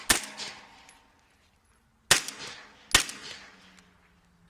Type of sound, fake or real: real